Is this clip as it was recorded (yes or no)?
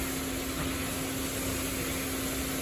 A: yes